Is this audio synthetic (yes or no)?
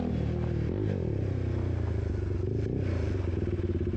no